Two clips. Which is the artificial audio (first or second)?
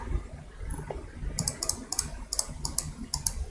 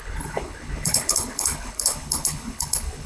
second